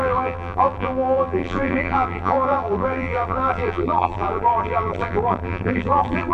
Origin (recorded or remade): remade